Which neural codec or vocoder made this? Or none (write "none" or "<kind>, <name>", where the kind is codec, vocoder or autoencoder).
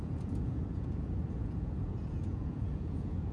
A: vocoder, Vocos